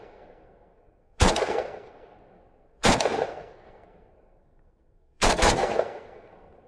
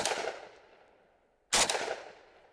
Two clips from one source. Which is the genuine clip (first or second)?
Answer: second